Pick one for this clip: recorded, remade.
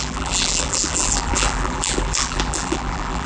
remade